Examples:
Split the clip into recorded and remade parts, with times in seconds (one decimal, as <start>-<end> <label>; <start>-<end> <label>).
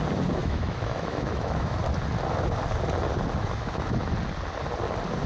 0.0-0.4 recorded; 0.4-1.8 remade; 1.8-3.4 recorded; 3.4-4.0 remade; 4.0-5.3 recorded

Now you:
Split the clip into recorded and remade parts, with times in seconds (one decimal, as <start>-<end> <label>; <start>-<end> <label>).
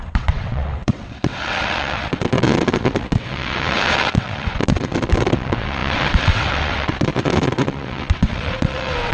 0.0-9.1 remade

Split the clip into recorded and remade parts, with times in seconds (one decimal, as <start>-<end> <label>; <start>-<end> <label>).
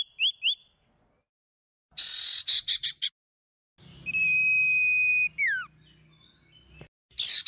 0.0-7.5 recorded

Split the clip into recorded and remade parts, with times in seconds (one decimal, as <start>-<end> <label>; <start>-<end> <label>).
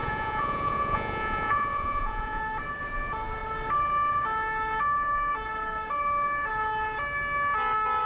0.0-2.4 remade; 2.4-8.1 recorded